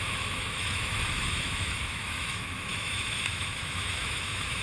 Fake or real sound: fake